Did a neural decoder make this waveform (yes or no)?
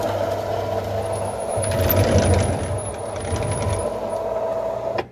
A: no